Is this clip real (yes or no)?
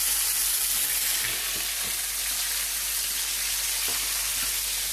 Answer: yes